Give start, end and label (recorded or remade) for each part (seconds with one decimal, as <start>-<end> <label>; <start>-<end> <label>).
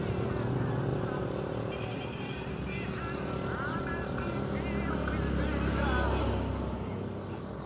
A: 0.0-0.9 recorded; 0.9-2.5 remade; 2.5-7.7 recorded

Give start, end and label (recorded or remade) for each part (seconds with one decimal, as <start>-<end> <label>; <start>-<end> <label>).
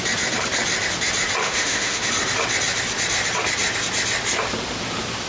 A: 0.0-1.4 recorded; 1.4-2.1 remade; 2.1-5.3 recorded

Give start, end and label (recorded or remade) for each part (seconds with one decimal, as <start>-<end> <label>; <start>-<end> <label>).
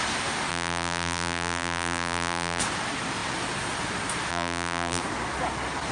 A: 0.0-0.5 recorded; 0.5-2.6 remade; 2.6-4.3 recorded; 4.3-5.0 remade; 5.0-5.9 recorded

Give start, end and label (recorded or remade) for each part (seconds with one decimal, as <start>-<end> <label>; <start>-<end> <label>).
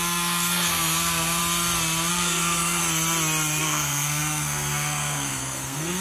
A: 0.0-1.4 remade; 1.4-2.1 recorded; 2.1-2.8 remade; 2.8-3.6 recorded; 3.6-6.0 remade